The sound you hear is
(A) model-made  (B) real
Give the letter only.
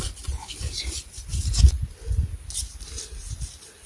B